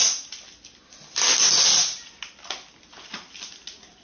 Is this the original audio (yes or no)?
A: yes